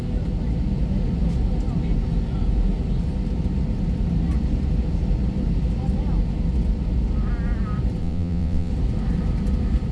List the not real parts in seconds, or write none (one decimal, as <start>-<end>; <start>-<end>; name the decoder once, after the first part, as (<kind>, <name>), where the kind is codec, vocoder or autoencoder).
8.0-8.7 (vocoder, WaveNeXt)